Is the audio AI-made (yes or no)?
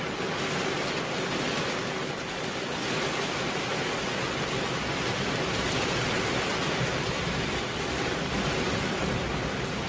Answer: no